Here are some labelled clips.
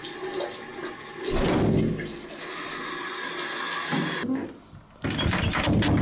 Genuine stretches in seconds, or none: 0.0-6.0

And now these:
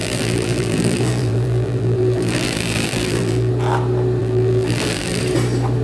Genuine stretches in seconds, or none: 3.5-4.2; 5.2-5.8

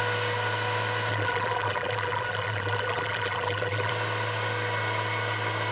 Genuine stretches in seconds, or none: 0.0-1.1; 3.9-5.7

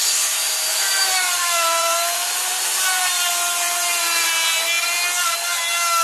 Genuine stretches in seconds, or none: 0.0-0.7; 4.3-6.0

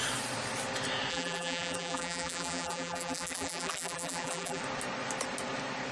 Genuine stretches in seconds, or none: 0.0-1.1; 4.6-5.9

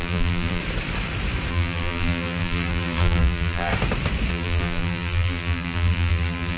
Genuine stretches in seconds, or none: 0.6-1.5; 3.7-4.3

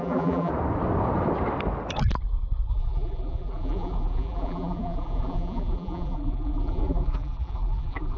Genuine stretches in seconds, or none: 0.5-2.7